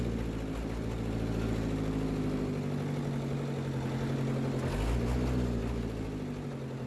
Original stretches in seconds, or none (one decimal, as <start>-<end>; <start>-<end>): 0.0-6.9